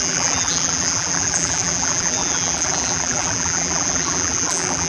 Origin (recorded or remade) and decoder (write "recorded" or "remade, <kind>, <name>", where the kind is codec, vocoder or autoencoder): remade, vocoder, BigVGAN v2